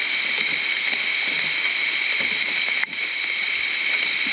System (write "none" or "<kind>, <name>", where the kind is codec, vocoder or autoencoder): none